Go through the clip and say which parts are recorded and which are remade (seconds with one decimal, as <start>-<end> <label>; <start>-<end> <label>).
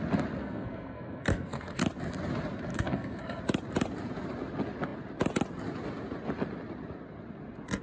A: 0.0-0.4 recorded; 0.4-1.8 remade; 1.8-2.7 recorded; 2.7-3.4 remade; 3.4-7.8 recorded